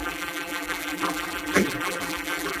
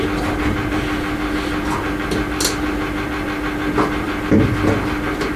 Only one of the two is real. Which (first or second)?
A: second